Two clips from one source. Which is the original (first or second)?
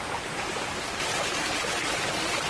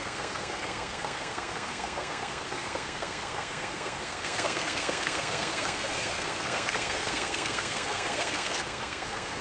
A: first